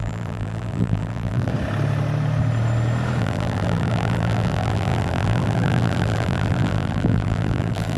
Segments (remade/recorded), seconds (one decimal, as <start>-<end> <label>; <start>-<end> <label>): 0.0-1.5 remade; 1.5-3.2 recorded; 3.2-8.0 remade